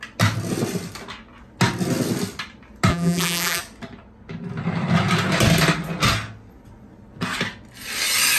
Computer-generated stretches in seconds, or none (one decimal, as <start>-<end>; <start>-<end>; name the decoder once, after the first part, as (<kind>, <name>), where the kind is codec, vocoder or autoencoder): 2.9-3.6 (vocoder, BigVGAN v2)